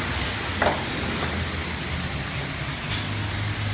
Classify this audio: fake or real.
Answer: real